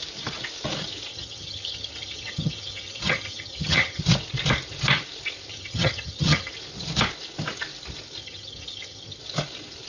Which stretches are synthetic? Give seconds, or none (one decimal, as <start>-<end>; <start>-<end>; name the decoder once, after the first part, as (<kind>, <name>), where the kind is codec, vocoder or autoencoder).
1.1-4.0 (vocoder, HiFi-GAN); 5.5-6.5; 8.2-9.2